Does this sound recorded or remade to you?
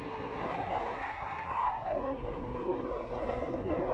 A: remade